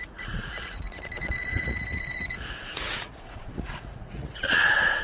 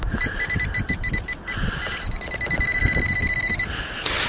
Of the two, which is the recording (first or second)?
second